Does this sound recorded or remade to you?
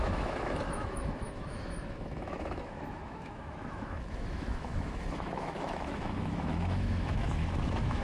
remade